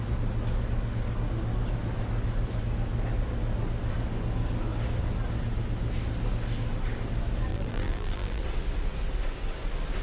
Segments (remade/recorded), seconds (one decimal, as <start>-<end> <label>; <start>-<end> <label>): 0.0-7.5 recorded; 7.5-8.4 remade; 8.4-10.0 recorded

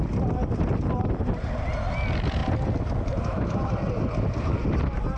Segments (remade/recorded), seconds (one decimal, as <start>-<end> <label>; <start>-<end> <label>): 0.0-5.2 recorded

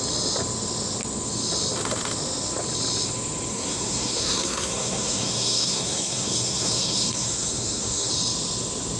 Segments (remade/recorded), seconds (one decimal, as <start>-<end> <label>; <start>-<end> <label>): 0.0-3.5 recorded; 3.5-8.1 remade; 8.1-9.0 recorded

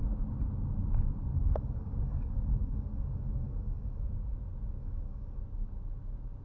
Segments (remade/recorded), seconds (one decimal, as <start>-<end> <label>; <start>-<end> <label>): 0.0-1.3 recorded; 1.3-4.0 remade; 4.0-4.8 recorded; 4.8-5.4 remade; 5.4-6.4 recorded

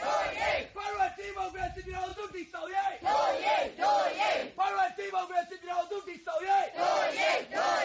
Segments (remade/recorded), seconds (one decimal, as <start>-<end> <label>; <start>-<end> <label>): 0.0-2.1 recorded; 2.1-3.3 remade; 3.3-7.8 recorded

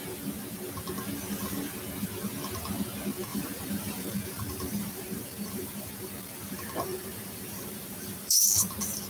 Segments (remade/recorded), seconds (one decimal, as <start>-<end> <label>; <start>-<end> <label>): 0.0-3.3 recorded; 3.3-8.5 remade; 8.5-9.1 recorded